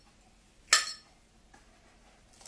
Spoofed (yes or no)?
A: no